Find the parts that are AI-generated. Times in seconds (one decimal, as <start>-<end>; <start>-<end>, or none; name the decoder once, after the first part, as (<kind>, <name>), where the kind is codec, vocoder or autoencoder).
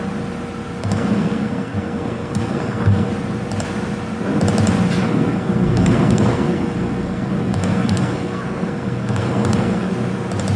0.8-3.1 (codec, SNAC); 5.0-9.9